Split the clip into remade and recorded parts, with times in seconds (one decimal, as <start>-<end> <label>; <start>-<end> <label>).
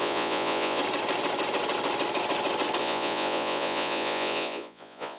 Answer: 0.0-0.8 remade; 0.8-2.8 recorded; 2.8-5.2 remade